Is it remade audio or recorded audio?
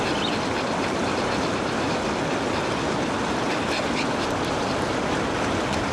recorded